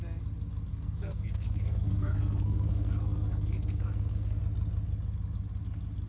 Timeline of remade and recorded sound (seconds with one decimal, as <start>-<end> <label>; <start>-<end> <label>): 0.0-0.7 recorded; 0.7-4.4 remade; 4.4-6.1 recorded